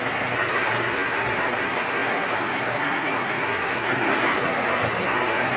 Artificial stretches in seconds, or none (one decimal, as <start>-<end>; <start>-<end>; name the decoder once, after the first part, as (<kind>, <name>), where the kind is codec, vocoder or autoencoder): 0.0-5.6 (codec, SNAC)